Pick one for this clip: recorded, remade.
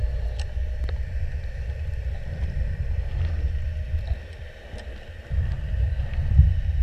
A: recorded